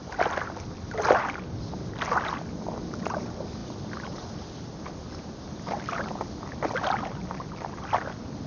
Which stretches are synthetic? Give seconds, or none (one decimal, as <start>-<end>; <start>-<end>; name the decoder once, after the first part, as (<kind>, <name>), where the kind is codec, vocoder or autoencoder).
none

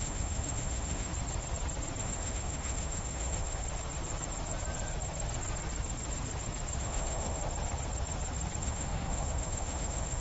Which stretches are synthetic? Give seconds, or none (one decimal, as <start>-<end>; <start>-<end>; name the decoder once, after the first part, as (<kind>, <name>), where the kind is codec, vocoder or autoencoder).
0.0-1.1 (autoencoder, DAC-VAE); 2.0-3.6; 6.8-7.4; 8.6-10.2

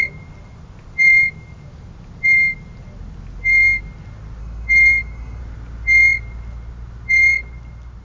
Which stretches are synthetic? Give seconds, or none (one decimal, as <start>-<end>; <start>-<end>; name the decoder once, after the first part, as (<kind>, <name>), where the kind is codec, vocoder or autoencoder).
4.4-5.4 (autoencoder, DAC-VAE)

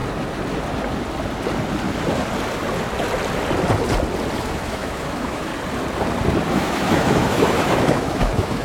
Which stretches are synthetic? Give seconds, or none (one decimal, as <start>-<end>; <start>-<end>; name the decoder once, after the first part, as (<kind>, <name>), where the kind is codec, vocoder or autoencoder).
4.4-5.5 (autoencoder, DAC-VAE); 6.5-8.6

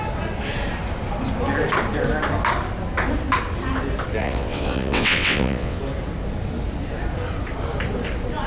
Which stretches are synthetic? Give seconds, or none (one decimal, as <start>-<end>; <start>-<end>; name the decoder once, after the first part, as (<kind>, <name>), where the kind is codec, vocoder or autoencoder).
4.2-5.8 (vocoder, WaveNeXt)